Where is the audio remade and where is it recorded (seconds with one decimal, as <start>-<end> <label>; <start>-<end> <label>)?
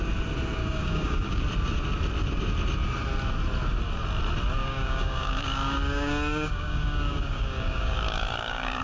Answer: 0.0-0.6 recorded; 0.6-1.4 remade; 1.4-4.6 recorded; 4.6-8.8 remade